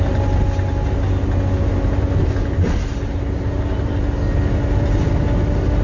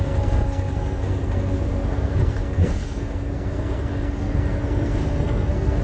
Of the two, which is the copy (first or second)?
second